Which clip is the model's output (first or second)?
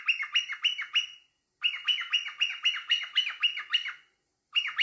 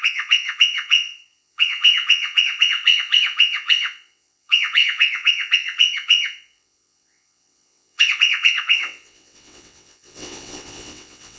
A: second